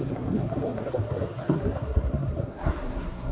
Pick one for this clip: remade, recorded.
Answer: remade